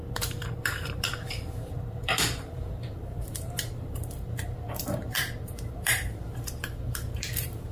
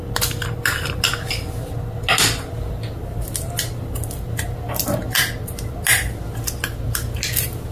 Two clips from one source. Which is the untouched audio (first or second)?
second